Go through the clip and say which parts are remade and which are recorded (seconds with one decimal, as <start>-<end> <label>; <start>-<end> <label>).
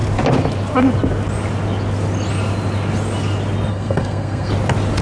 0.0-3.7 recorded; 3.7-4.5 remade; 4.5-5.0 recorded